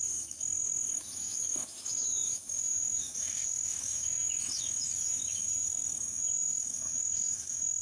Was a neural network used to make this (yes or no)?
yes